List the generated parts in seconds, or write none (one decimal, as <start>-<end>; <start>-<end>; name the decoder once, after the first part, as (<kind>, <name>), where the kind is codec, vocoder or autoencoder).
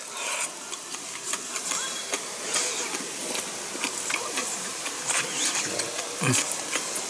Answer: 4.4-5.6 (vocoder, BigVGAN v2)